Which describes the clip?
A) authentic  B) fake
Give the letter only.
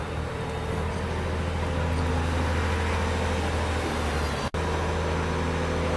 A